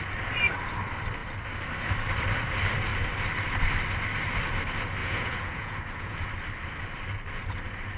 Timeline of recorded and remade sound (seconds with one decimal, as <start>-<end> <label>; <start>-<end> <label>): 0.0-5.0 recorded; 5.0-6.3 remade; 6.3-8.0 recorded